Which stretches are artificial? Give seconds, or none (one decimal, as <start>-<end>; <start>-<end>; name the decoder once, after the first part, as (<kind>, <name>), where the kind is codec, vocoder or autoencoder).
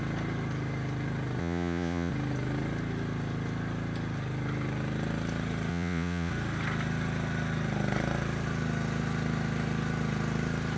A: 1.4-2.1 (vocoder, Vocos); 5.7-6.3